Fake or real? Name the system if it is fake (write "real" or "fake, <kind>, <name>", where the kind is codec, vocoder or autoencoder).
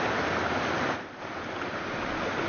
real